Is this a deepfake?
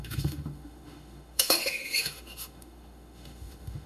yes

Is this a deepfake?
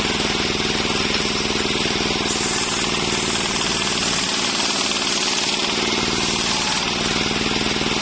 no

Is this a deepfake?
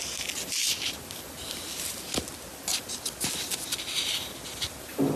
no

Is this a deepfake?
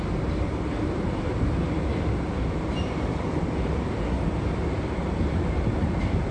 no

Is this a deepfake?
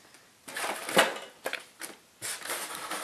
no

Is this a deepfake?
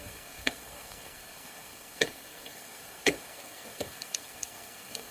yes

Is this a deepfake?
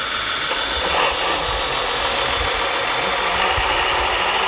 no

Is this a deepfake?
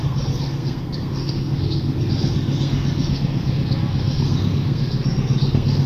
yes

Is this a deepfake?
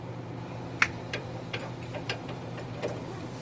yes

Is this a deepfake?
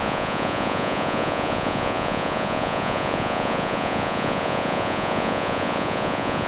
yes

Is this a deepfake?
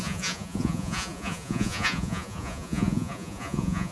yes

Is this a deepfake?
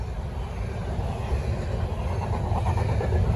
no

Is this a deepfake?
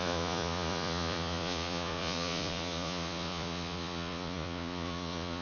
yes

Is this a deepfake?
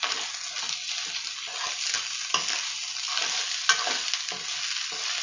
no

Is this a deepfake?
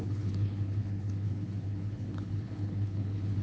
yes